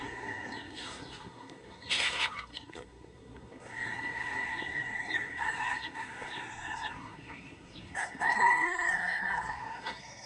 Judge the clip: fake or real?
fake